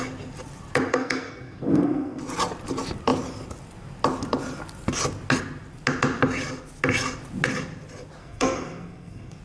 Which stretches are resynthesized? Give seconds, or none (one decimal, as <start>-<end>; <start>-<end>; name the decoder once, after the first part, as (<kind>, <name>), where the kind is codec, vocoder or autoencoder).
0.9-2.2 (codec, SNAC); 8.2-9.4

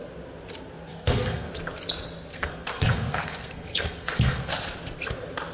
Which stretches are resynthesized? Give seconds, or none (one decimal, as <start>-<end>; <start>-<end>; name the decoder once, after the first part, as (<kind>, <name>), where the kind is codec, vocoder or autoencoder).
0.9-1.5 (codec, SNAC); 2.3-4.5

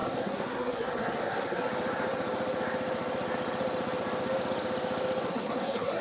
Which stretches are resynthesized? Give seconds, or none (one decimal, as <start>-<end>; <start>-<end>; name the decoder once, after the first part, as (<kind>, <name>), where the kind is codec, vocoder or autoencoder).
0.0-1.7 (codec, SNAC); 5.3-6.0

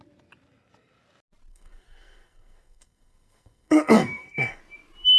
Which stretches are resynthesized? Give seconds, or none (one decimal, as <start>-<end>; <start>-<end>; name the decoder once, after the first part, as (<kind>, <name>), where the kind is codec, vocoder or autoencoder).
1.5-4.6 (codec, SNAC)

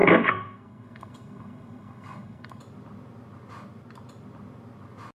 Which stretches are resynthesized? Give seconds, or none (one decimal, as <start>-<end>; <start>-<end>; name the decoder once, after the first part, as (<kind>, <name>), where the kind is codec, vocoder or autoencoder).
0.0-2.6 (codec, SNAC)

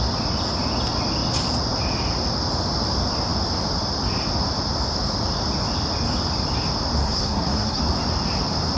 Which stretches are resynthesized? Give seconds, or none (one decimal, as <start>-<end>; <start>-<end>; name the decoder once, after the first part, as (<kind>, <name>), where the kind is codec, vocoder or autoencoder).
7.0-7.8 (codec, SNAC)

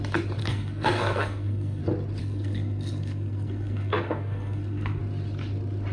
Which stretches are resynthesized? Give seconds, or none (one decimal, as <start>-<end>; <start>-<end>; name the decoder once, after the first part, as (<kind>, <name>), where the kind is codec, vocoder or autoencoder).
0.4-1.8 (codec, SNAC); 2.2-5.0